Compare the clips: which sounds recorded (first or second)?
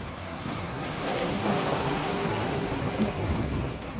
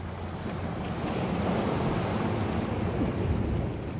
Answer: second